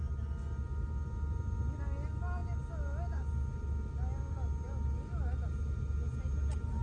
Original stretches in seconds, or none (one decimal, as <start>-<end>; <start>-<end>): 0.0-6.8